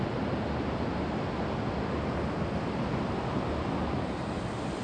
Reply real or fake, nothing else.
real